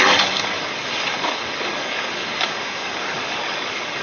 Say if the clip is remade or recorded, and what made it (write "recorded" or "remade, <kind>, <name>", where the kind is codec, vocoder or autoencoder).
remade, codec, DAC